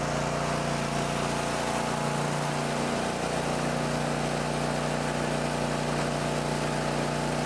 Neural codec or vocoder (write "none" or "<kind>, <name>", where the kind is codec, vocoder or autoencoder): none